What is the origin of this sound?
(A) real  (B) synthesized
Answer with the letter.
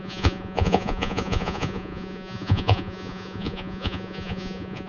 B